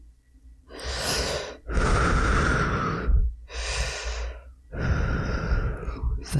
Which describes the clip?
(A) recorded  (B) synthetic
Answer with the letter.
A